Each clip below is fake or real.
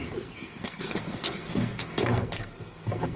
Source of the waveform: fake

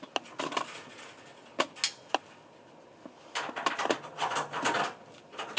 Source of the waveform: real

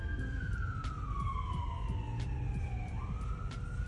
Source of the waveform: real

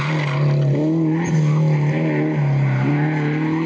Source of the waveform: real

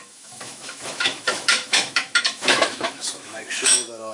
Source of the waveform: fake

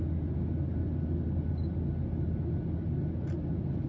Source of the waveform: real